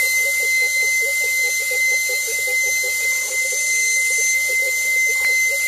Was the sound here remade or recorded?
recorded